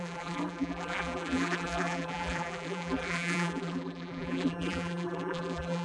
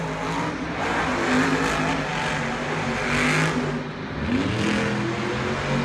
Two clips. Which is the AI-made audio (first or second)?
first